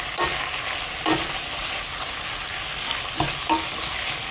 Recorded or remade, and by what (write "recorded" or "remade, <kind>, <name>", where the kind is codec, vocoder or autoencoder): recorded